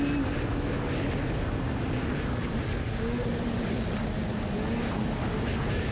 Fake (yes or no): no